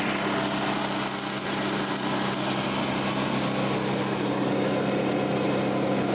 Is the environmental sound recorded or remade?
recorded